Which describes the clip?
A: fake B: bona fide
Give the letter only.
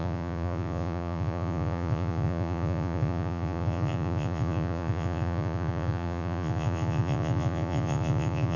A